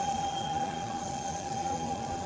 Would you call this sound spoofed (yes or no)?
yes